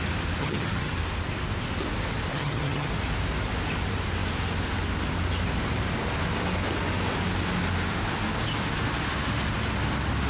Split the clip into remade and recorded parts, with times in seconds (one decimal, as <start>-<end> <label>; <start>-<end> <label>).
0.0-0.4 recorded; 0.4-0.9 remade; 0.9-2.3 recorded; 2.3-2.9 remade; 2.9-10.3 recorded